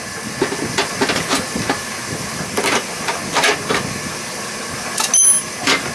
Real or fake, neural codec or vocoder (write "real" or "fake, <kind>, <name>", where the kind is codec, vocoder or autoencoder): real